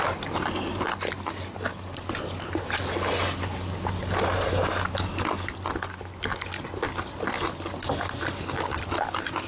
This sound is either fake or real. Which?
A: real